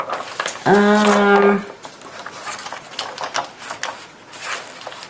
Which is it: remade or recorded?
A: recorded